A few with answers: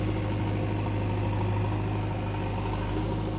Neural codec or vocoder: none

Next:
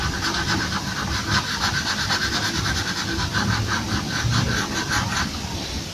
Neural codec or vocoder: none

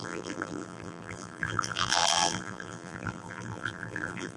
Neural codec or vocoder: vocoder, BigVGAN v2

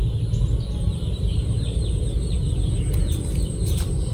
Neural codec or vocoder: none